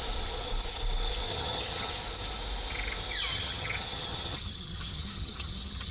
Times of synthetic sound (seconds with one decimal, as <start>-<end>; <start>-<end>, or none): 1.3-1.9; 3.3-5.9